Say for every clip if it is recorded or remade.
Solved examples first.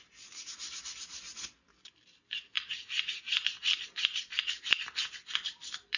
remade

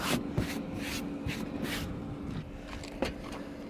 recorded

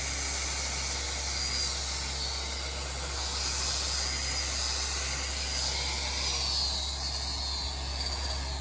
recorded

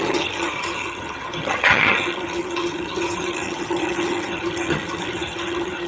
remade